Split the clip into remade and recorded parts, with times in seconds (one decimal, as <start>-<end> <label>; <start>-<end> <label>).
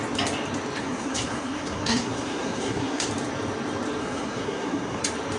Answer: 0.0-0.8 recorded; 0.8-3.1 remade; 3.1-4.0 recorded; 4.0-5.0 remade; 5.0-5.4 recorded